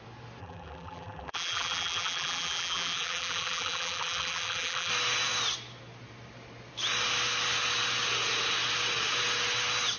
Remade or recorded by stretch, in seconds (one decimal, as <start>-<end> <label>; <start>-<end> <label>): 0.0-0.4 recorded; 0.4-4.9 remade; 4.9-10.0 recorded